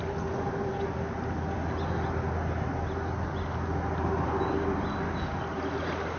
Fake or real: real